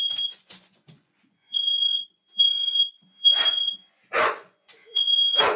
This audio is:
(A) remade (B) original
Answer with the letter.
A